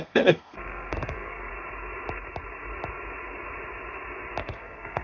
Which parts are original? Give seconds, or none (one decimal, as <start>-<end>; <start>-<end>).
1.5-4.4